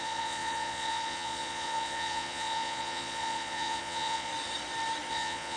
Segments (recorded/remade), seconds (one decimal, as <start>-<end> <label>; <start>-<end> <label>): 0.0-4.3 remade; 4.3-5.1 recorded; 5.1-5.6 remade